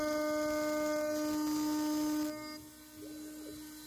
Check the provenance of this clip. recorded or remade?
recorded